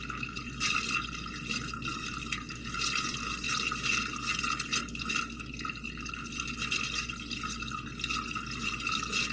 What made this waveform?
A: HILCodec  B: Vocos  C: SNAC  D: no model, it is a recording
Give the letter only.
D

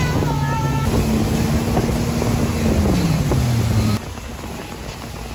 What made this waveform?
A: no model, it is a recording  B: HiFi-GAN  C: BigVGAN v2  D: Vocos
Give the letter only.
A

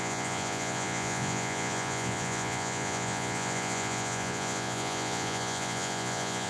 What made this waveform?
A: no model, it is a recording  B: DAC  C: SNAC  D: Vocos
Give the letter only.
D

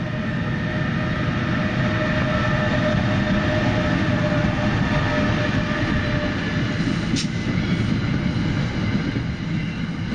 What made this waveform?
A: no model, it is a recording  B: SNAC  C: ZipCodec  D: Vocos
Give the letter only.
A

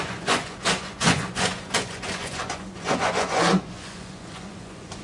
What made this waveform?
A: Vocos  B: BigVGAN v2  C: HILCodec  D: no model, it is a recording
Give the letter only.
A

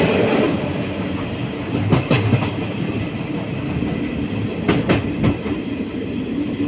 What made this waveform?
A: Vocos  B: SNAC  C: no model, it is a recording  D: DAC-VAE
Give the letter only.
C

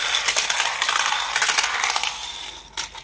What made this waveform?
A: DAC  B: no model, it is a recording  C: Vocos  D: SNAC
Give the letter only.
B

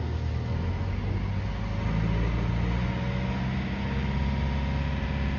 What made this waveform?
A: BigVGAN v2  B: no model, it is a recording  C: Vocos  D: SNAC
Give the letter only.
B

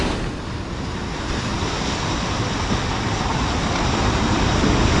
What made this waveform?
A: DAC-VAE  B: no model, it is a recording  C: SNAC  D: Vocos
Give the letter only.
B